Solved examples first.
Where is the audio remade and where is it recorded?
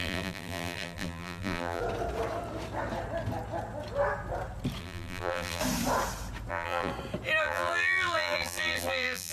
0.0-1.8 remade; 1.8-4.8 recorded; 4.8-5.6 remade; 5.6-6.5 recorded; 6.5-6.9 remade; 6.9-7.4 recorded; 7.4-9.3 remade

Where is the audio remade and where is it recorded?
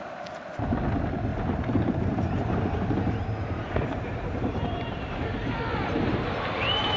0.0-1.3 recorded; 1.3-5.5 remade; 5.5-7.0 recorded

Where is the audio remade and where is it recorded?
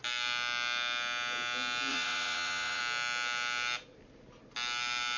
0.0-1.9 recorded; 1.9-2.8 remade; 2.8-5.2 recorded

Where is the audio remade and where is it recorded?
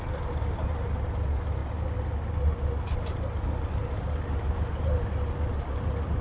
0.0-6.2 recorded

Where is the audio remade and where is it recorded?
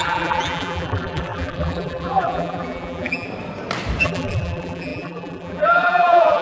0.0-3.3 remade; 3.3-4.0 recorded; 4.0-6.4 remade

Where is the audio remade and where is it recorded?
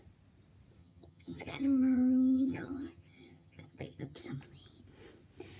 0.0-0.8 recorded; 0.8-4.2 remade; 4.2-5.6 recorded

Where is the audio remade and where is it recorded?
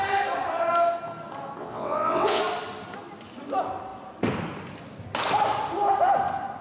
0.0-1.6 recorded; 1.6-2.4 remade; 2.4-6.6 recorded